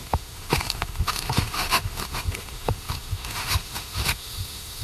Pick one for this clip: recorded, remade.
remade